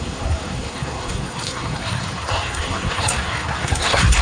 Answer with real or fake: fake